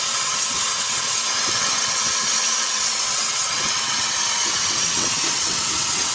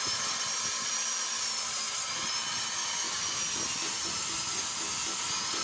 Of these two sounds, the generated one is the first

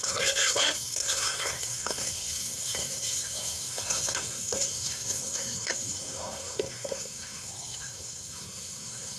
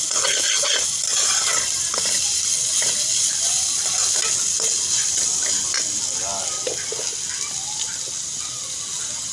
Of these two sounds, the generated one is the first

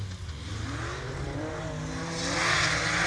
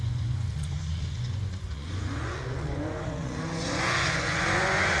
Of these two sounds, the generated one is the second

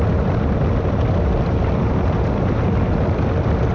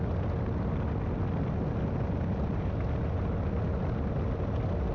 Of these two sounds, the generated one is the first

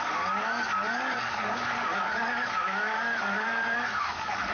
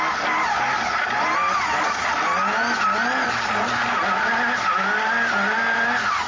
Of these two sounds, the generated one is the first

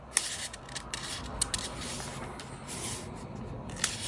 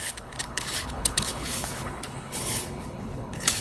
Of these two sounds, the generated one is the second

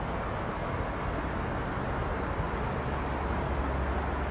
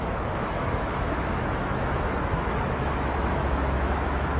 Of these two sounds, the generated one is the second